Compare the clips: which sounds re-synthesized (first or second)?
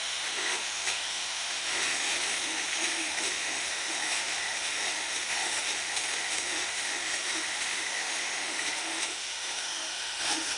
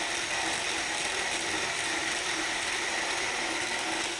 first